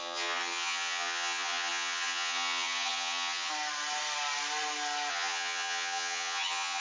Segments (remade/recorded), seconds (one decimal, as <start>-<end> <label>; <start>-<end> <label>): 0.0-3.5 remade; 3.5-5.1 recorded; 5.1-6.8 remade